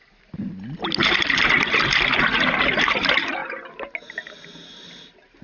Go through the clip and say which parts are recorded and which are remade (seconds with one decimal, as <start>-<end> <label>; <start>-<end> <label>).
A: 0.0-5.4 recorded